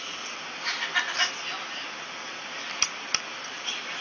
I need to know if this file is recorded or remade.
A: recorded